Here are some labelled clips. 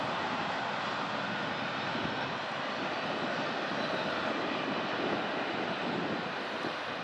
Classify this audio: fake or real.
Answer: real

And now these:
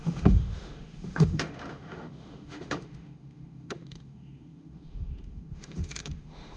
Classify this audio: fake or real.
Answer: fake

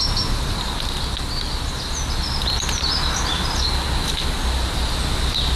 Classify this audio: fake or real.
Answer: real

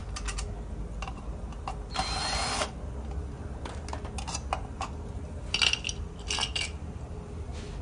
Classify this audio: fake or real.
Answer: real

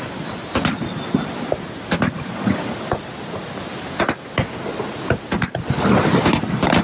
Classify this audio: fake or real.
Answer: real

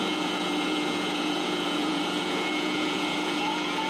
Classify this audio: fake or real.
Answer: fake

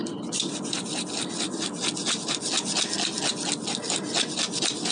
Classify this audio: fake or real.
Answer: real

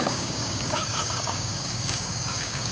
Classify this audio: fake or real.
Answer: fake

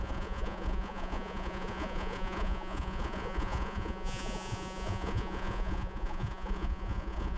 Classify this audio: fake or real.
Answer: fake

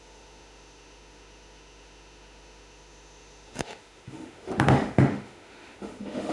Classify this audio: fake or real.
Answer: fake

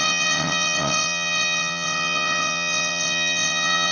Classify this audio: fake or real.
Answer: fake